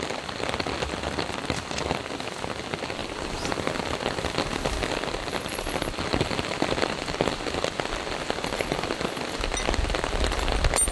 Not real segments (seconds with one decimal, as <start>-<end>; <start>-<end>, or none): none